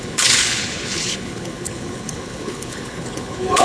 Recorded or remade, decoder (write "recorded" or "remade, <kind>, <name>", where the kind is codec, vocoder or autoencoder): remade, codec, HILCodec